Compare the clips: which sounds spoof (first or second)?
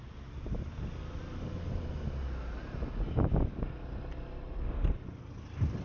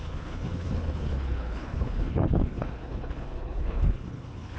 second